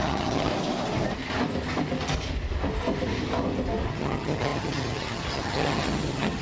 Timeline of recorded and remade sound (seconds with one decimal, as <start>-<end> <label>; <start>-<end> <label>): 0.0-0.5 remade; 0.5-3.9 recorded; 3.9-6.4 remade